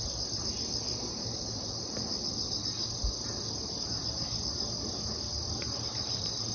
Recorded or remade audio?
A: recorded